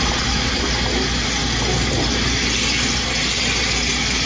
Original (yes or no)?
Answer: yes